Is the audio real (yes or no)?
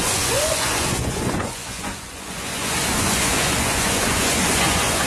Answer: no